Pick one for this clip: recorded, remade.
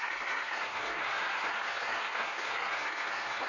remade